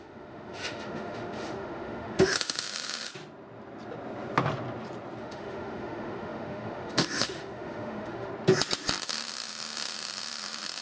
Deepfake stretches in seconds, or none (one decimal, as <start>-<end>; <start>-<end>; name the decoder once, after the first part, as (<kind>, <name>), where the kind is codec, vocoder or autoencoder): 0.0-3.1 (autoencoder, DAC-VAE); 5.2-8.3; 9.0-10.8